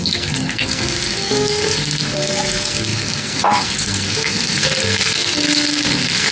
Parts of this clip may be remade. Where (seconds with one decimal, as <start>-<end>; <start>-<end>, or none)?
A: 0.0-6.3